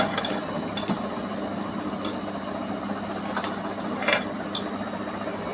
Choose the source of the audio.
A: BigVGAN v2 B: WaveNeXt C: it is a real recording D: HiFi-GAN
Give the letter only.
C